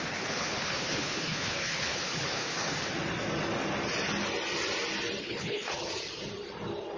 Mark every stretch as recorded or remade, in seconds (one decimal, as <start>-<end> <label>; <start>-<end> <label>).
0.0-2.9 remade; 2.9-5.2 recorded; 5.2-5.9 remade; 5.9-7.0 recorded